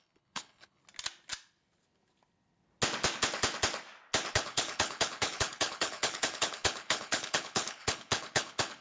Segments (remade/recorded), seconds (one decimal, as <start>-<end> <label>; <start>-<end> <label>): 0.0-0.8 remade; 0.8-4.3 recorded; 4.3-8.8 remade